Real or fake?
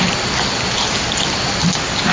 real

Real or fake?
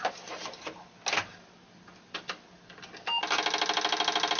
real